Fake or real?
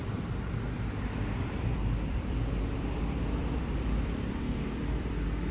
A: fake